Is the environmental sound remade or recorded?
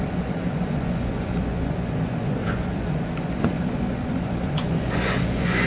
remade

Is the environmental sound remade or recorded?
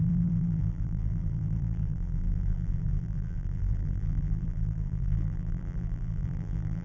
remade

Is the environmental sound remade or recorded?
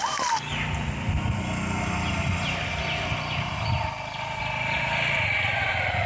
recorded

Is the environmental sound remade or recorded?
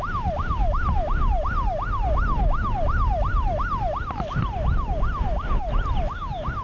recorded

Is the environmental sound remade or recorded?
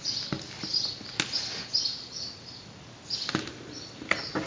recorded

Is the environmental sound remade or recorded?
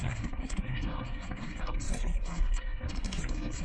remade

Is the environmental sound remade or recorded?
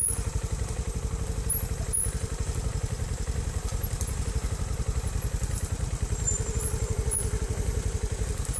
recorded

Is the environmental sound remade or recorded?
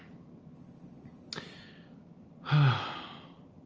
recorded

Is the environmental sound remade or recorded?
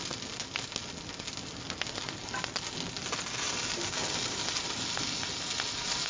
recorded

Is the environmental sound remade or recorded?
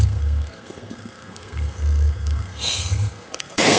remade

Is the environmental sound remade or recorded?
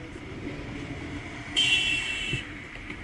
remade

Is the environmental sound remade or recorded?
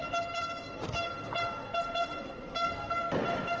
recorded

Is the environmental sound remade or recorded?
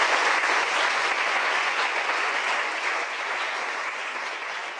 remade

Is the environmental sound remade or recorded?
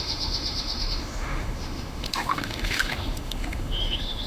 remade